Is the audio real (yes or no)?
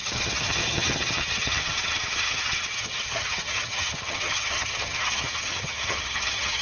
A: no